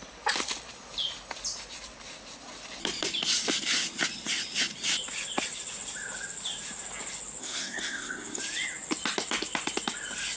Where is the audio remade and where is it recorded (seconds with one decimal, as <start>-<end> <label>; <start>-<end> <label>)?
0.0-7.4 recorded; 7.4-8.4 remade; 8.4-10.4 recorded